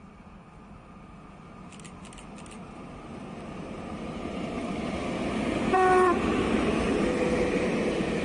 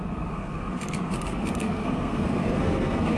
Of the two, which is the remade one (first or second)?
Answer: second